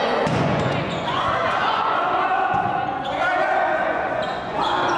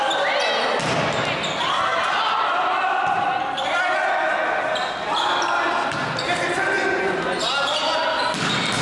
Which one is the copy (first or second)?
first